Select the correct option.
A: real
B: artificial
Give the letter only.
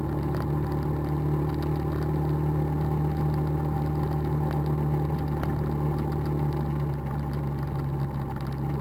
A